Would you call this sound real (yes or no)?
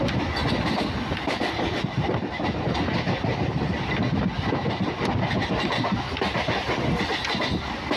yes